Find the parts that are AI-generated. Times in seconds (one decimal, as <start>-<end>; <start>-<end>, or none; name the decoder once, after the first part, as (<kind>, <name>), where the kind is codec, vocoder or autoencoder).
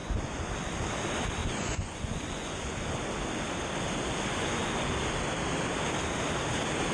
0.0-0.5 (vocoder, Vocos); 1.4-2.9; 4.3-4.9